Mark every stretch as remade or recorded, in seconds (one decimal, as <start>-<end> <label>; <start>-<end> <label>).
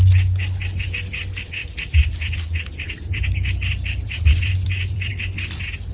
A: 0.0-1.6 recorded; 1.6-5.1 remade; 5.1-5.9 recorded